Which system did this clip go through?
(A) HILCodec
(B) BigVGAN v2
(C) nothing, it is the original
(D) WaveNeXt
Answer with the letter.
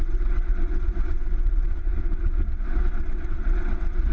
D